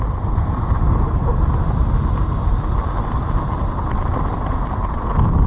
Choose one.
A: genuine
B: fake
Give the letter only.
A